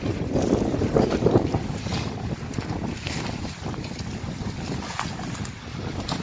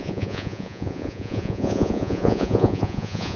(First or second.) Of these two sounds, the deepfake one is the second